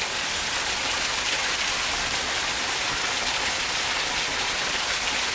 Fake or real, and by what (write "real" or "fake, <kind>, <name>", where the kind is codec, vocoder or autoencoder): real